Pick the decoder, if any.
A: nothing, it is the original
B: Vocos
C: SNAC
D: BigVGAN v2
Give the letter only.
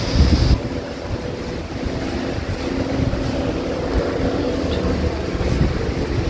A